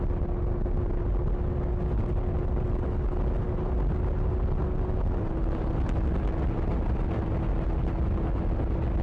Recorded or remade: recorded